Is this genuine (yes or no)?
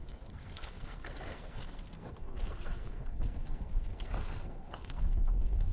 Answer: no